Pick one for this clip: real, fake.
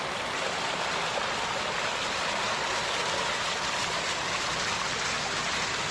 real